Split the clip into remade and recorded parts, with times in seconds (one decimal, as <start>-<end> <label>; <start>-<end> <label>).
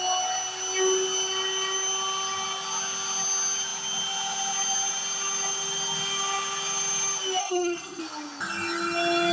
0.0-7.4 recorded; 7.4-8.0 remade; 8.0-9.3 recorded